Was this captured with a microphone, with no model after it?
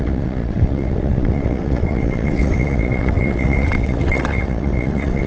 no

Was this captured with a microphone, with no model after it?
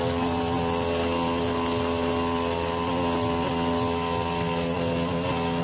yes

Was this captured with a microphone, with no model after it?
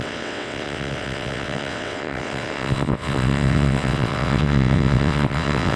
no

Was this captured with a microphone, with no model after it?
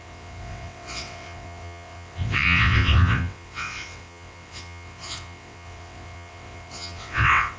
no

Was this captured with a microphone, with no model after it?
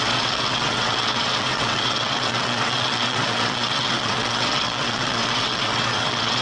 no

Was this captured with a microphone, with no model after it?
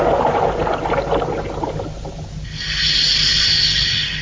yes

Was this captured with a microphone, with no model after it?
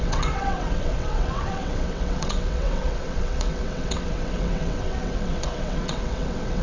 no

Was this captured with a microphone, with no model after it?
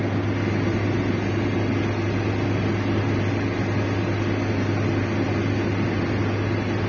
yes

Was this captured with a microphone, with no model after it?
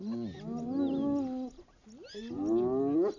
yes